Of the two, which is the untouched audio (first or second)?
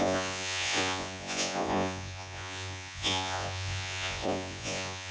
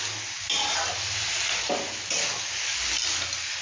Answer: second